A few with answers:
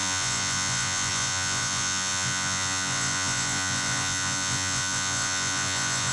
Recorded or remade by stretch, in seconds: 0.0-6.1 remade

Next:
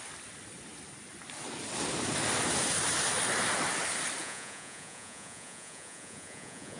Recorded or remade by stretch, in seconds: 0.0-4.2 recorded; 4.2-6.8 remade